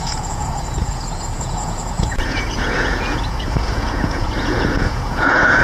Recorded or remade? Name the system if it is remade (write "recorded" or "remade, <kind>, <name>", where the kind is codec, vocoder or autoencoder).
remade, vocoder, Vocos